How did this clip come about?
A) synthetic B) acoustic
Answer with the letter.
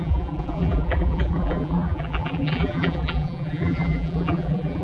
A